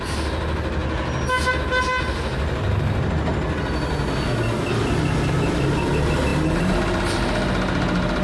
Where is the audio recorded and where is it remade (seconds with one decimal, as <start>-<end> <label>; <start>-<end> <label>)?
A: 0.0-8.2 recorded

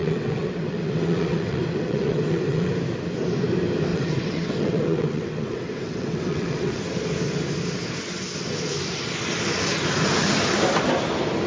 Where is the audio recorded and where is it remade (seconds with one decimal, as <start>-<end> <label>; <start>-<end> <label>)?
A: 0.0-2.7 remade; 2.7-3.9 recorded; 3.9-6.8 remade; 6.8-11.5 recorded

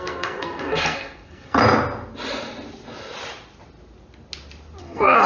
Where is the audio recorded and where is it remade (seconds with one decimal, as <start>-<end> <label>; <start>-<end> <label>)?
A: 0.0-1.6 remade; 1.6-4.8 recorded; 4.8-5.3 remade

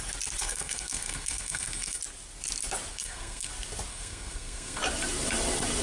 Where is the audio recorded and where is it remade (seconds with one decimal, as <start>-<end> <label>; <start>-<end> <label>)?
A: 0.0-0.4 recorded; 0.4-2.0 remade; 2.0-2.9 recorded; 2.9-3.5 remade; 3.5-3.9 recorded; 3.9-4.8 remade; 4.8-5.8 recorded

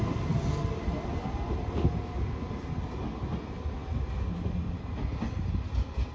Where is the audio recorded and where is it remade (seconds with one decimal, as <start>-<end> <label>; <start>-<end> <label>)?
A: 0.0-6.1 recorded

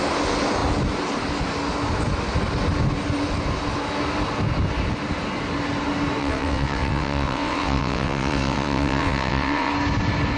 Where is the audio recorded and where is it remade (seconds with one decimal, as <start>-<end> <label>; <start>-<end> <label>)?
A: 0.0-6.2 recorded; 6.2-9.7 remade; 9.7-10.4 recorded

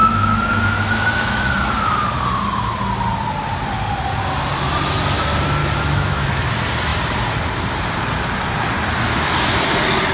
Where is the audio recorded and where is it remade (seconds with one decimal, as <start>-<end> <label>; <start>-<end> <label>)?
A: 0.0-1.5 remade; 1.5-5.6 recorded; 5.6-6.5 remade; 6.5-10.1 recorded